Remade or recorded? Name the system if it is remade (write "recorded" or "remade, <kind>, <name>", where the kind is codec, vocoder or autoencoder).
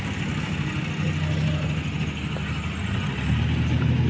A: recorded